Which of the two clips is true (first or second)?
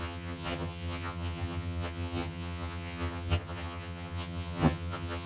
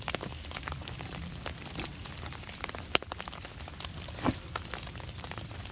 second